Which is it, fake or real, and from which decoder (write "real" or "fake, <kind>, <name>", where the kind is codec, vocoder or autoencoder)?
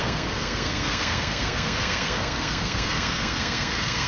fake, codec, SNAC